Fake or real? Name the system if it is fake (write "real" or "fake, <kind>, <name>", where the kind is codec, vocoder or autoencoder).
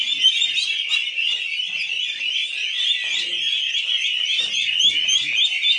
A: real